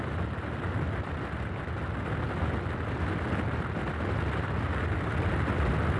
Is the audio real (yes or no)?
yes